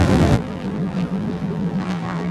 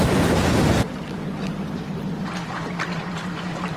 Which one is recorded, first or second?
second